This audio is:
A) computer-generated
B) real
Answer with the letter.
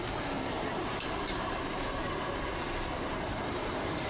A